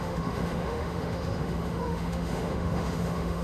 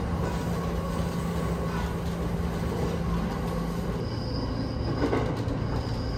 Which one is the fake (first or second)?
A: first